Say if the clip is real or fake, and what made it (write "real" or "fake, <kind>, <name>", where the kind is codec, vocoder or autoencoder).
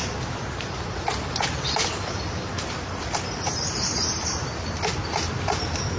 real